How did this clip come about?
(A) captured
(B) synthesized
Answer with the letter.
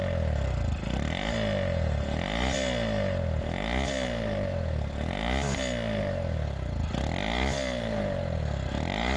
A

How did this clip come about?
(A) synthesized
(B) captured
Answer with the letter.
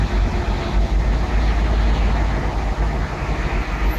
B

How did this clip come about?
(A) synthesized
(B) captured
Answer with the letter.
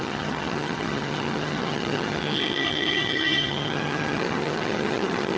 A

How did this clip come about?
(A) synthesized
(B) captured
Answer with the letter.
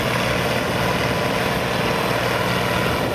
B